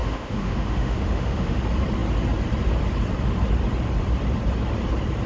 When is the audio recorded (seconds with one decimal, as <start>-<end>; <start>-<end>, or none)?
1.6-5.3